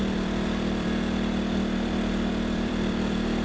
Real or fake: fake